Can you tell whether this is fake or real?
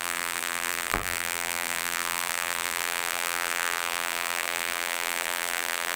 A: fake